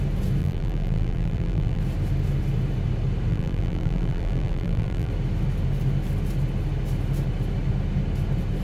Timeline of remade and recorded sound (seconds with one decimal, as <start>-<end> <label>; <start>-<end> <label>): 0.0-0.4 recorded; 0.4-1.8 remade; 1.8-3.3 recorded; 3.3-5.1 remade; 5.1-8.6 recorded